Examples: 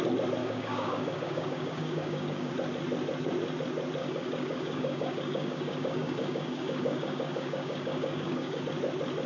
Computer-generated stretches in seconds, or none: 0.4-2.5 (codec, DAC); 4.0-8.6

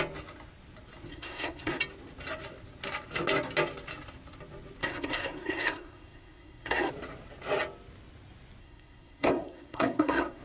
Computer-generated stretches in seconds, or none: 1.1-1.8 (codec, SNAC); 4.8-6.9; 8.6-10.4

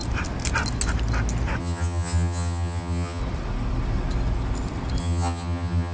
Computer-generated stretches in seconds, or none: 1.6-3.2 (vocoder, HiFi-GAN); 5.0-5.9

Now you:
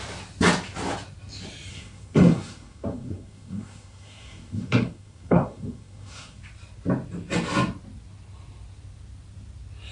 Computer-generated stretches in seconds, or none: 1.7-6.4 (codec, SNAC)

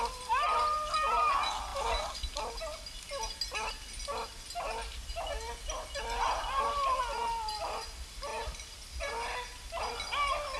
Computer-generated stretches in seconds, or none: none

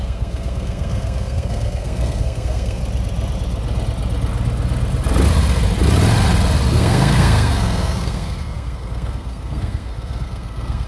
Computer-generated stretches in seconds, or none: 0.0-2.8 (codec, SNAC); 6.7-10.9

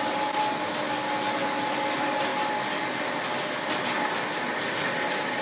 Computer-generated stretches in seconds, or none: none